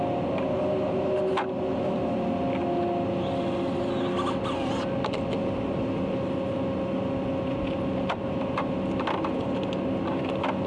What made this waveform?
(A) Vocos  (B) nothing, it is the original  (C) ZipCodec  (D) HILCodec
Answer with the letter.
B